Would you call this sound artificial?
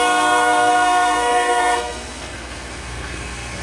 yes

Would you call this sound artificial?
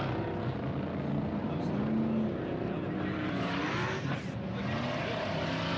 no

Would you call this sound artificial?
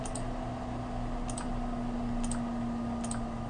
no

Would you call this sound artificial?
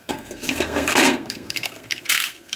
yes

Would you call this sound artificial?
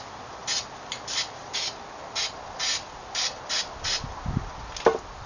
no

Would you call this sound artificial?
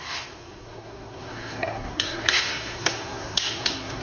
yes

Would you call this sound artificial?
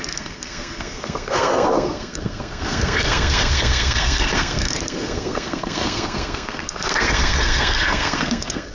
yes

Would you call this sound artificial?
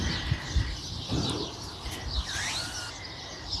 no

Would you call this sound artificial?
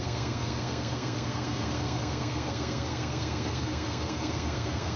yes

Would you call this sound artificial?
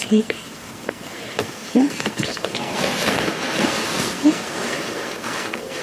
yes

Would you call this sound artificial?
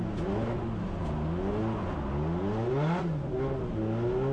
no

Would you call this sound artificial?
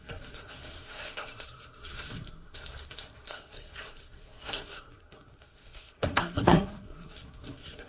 yes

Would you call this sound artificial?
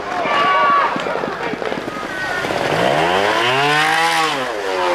no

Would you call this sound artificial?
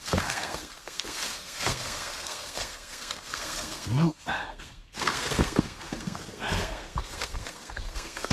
yes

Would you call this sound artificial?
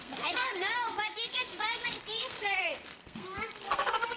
yes